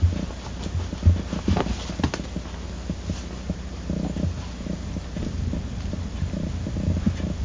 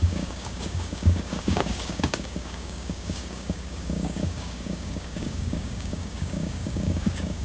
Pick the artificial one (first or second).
second